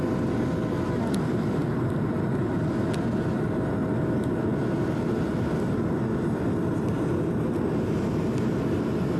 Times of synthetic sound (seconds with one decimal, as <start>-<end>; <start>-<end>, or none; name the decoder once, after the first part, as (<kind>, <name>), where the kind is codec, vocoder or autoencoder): none